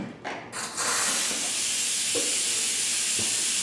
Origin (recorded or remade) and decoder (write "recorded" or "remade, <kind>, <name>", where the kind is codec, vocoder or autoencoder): recorded